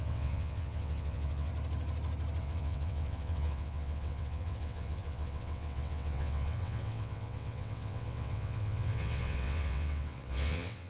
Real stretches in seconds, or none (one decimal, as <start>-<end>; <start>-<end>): 1.5-2.4